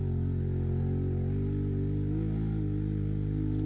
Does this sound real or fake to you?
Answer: real